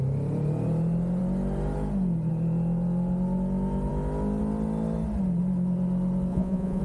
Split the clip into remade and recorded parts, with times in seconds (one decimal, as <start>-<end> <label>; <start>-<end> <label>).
0.0-6.3 recorded; 6.3-6.8 remade